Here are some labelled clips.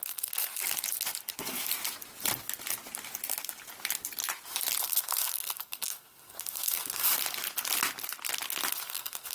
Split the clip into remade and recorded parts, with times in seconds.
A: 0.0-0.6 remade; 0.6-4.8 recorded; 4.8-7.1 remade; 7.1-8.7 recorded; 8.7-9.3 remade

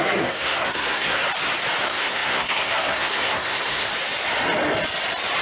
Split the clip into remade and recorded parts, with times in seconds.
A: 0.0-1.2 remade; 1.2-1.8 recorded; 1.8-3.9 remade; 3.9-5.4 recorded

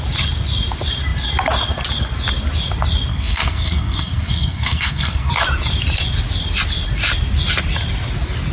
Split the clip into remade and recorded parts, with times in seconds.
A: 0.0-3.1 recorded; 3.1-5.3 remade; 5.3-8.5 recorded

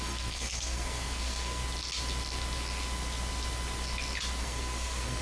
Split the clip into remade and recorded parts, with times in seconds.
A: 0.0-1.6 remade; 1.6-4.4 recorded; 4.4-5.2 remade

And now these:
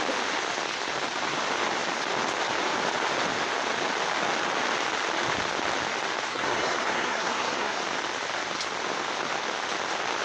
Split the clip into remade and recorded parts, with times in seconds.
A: 0.0-6.3 recorded; 6.3-7.8 remade; 7.8-10.2 recorded

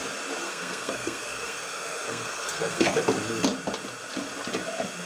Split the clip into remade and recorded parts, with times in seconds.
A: 0.0-0.4 recorded; 0.4-3.0 remade; 3.0-5.1 recorded